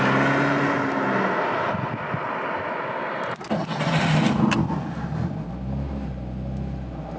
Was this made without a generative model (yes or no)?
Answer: yes